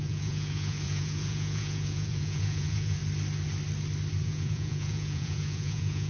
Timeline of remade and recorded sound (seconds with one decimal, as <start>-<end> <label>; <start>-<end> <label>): 0.0-3.0 remade; 3.0-4.2 recorded; 4.2-6.1 remade